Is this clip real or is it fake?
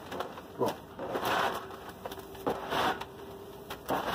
real